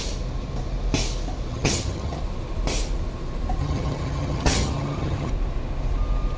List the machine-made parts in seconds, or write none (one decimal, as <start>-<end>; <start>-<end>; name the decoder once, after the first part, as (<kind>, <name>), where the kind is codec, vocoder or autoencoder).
1.5-2.2 (vocoder, HiFi-GAN); 3.6-5.3